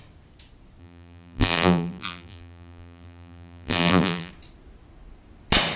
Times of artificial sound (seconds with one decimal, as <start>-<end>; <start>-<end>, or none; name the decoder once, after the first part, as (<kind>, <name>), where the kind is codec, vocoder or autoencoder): 0.8-4.3 (vocoder, BigVGAN v2)